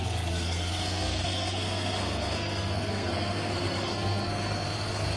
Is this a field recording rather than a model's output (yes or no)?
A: no